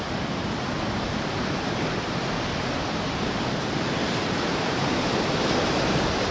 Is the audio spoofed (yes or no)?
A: no